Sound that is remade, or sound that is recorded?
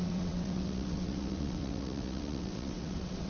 remade